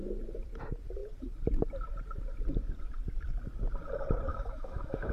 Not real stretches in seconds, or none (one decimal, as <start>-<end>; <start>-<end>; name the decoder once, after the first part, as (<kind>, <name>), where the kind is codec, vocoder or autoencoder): 4.3-5.1 (autoencoder, DAC-VAE)

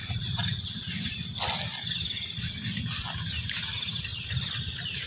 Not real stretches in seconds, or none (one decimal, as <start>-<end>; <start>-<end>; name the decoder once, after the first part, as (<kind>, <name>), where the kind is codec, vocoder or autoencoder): none